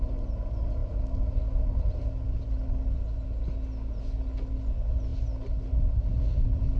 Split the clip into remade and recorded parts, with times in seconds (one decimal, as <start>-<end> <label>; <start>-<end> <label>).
0.0-6.8 recorded